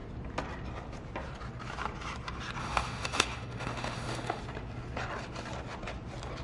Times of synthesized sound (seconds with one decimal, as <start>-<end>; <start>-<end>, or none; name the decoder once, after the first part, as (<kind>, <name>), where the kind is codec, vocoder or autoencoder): 2.6-4.4 (autoencoder, DAC-VAE)